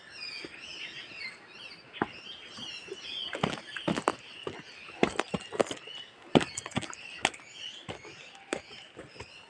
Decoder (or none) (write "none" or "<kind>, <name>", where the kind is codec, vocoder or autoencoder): none